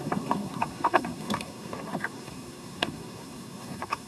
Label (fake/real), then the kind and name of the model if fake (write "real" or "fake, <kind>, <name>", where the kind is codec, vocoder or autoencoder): fake, codec, SNAC